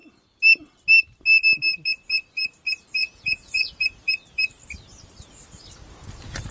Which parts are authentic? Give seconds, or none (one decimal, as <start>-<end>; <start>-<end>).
0.0-3.0; 3.7-6.5